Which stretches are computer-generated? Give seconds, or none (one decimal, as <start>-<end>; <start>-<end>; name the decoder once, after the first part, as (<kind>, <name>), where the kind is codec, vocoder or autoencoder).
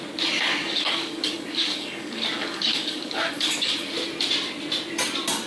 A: 0.6-3.9 (codec, DAC)